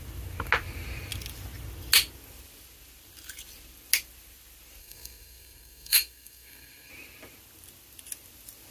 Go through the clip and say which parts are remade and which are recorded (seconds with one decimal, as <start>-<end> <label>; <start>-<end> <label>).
0.0-4.8 recorded; 4.8-6.9 remade; 6.9-8.7 recorded